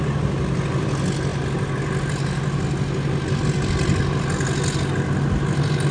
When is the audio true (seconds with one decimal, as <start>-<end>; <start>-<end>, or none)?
0.0-5.9